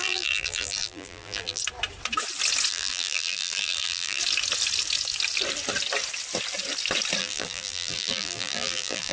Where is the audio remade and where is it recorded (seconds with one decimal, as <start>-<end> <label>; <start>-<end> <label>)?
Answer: 0.0-1.6 remade; 1.6-2.7 recorded; 2.7-4.2 remade; 4.2-7.2 recorded; 7.2-9.1 remade